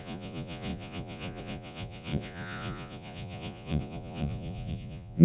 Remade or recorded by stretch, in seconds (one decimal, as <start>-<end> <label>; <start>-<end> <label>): 0.0-5.2 remade